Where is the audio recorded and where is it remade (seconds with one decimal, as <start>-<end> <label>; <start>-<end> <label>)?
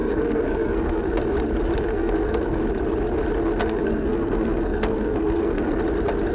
0.0-1.2 remade; 1.2-1.9 recorded; 1.9-2.6 remade; 2.6-3.6 recorded; 3.6-5.8 remade; 5.8-6.3 recorded